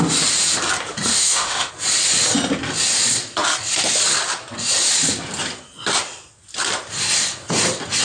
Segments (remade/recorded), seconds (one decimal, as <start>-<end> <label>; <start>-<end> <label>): 0.0-1.1 recorded; 1.1-1.7 remade; 1.7-8.0 recorded